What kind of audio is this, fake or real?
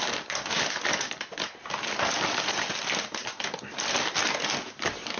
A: real